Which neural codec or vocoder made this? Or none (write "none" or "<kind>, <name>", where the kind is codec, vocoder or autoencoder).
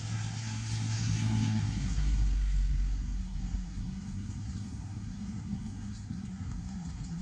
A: codec, SNAC